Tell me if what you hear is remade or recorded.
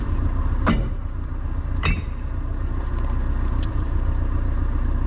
remade